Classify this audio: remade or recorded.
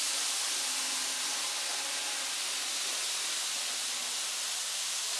recorded